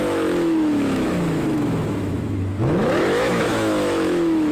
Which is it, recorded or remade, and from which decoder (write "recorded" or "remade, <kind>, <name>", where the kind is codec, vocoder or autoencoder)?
remade, autoencoder, DAC-VAE